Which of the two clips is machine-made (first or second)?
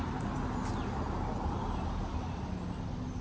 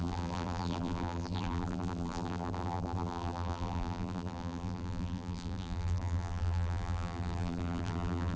second